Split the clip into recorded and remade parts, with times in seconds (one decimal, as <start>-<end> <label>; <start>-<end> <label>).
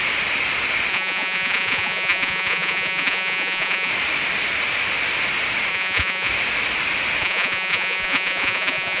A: 0.0-0.9 recorded; 0.9-3.9 remade; 3.9-5.7 recorded; 5.7-6.3 remade; 6.3-7.2 recorded; 7.2-9.0 remade